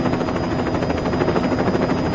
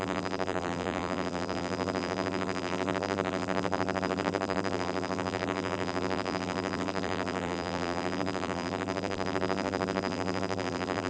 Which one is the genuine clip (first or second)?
first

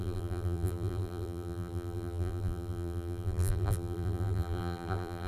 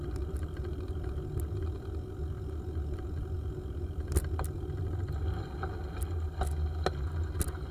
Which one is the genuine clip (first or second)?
second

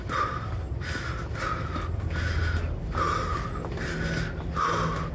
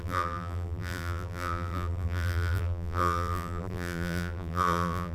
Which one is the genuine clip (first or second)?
first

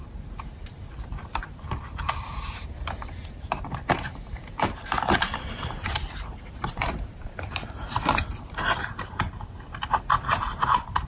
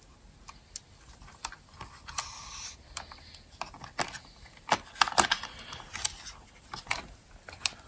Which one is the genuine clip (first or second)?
second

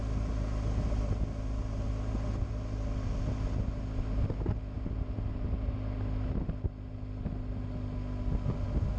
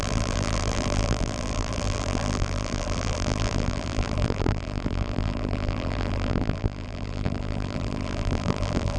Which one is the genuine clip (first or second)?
first